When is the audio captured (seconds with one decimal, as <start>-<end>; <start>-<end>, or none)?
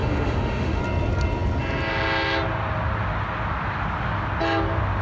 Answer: 0.8-5.0